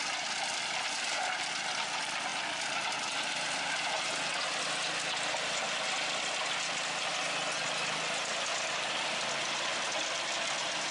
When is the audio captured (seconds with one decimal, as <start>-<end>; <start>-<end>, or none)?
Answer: 0.0-10.9